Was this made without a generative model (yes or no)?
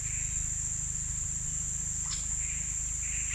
yes